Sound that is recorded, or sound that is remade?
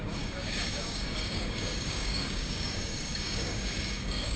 remade